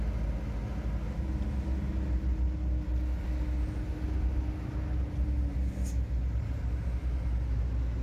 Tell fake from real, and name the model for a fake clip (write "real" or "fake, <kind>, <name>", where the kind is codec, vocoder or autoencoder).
real